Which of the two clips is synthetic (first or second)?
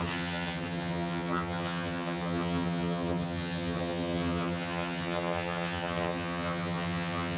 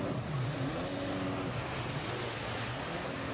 first